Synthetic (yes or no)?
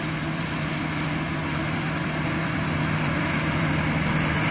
yes